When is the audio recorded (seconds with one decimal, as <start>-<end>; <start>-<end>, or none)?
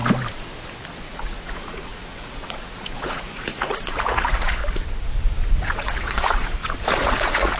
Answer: 0.0-1.0; 4.6-5.6